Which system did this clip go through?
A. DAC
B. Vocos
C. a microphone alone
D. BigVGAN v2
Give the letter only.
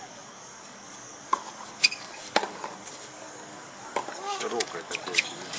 A